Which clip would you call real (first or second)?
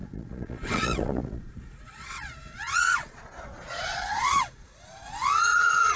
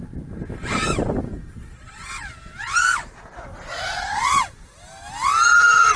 second